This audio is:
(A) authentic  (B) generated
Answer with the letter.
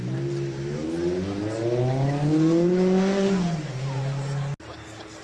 A